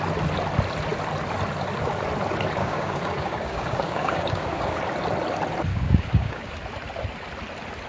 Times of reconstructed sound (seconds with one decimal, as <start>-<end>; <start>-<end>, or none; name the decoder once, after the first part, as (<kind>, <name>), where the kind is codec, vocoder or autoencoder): 2.6-4.8 (codec, DAC); 5.7-6.5